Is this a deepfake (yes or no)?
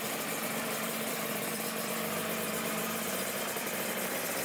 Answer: yes